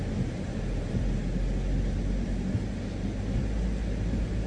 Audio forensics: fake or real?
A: real